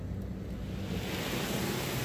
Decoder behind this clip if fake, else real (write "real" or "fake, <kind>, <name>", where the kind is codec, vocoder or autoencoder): real